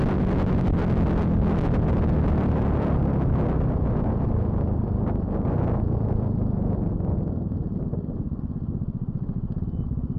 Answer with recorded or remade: recorded